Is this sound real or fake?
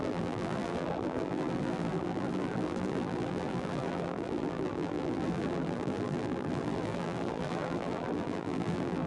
fake